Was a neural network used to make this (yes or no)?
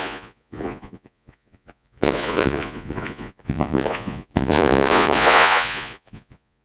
yes